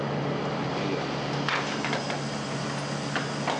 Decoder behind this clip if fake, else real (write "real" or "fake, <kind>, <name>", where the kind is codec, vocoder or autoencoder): real